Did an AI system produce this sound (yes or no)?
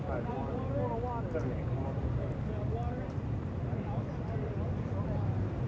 no